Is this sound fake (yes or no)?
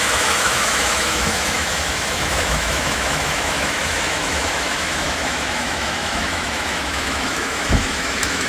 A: yes